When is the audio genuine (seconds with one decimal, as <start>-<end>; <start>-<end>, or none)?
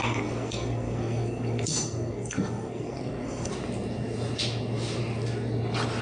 3.5-6.0